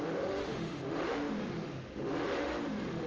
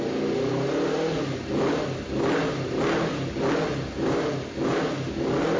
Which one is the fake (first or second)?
first